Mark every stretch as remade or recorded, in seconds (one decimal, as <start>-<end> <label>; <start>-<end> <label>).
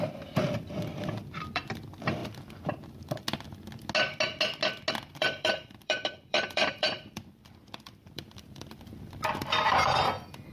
0.0-2.2 remade; 2.2-4.9 recorded; 4.9-10.5 remade